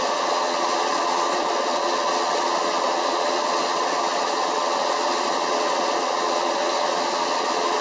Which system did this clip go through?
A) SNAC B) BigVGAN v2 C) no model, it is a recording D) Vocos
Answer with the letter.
D